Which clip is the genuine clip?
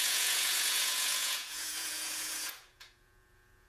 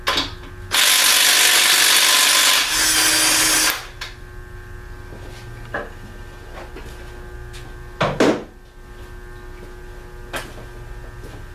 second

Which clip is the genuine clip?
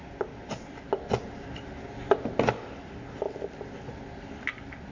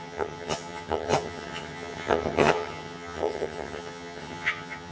first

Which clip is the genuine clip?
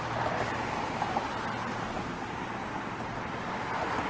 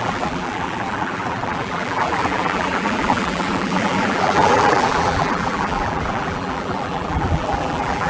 first